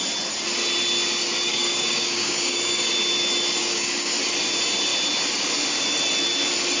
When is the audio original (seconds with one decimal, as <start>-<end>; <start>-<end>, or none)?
0.0-1.5; 2.9-3.6; 4.2-6.8